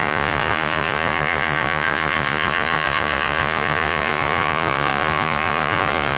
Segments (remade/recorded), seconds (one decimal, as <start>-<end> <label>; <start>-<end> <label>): 0.0-6.2 remade